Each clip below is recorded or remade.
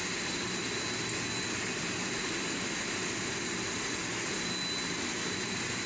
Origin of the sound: recorded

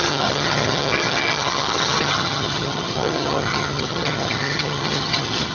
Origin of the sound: remade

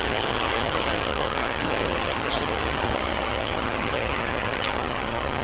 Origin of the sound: remade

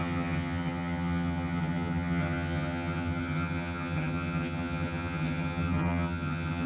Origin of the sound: remade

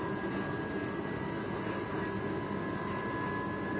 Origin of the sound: recorded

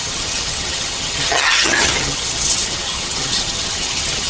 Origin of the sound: remade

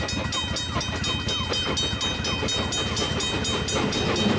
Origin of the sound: recorded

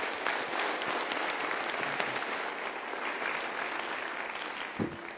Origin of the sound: recorded